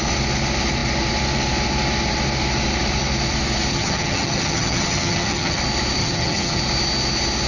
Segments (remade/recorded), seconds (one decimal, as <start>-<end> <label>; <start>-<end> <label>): 0.0-3.7 recorded; 3.7-5.6 remade; 5.6-6.0 recorded; 6.0-6.6 remade; 6.6-7.5 recorded